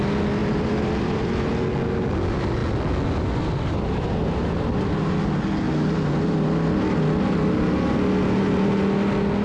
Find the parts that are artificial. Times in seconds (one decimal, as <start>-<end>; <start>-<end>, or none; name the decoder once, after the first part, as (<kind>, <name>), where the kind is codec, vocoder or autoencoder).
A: 0.4-1.5 (vocoder, BigVGAN v2)